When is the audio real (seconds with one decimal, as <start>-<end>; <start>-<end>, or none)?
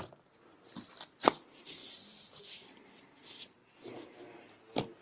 0.0-3.6; 4.6-5.0